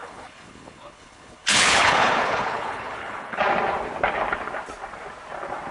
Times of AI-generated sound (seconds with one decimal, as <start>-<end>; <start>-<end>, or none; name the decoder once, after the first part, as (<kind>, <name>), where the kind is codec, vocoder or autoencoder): 0.0-3.4 (codec, HILCodec)